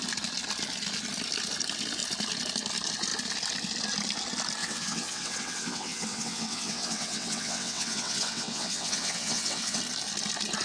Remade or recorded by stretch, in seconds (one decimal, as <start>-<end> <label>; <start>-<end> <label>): 0.0-4.6 recorded; 4.6-9.8 remade; 9.8-10.6 recorded